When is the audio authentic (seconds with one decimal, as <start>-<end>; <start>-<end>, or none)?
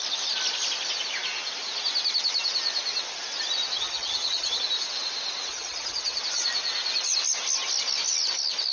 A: 0.0-3.8; 4.6-5.5; 6.2-8.7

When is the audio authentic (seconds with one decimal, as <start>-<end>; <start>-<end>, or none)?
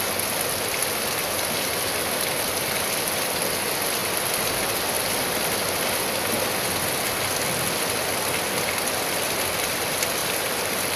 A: 0.0-10.2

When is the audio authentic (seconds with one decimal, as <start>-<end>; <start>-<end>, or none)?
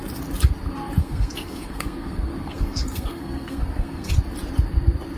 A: 0.0-1.0; 4.1-5.2